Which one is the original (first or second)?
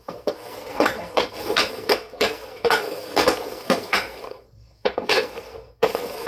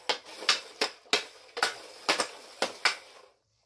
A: second